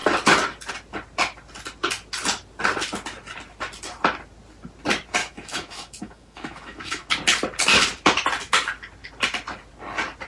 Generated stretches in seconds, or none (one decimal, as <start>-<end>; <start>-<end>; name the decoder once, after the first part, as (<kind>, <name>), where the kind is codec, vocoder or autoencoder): 5.2-7.1 (autoencoder, DAC-VAE)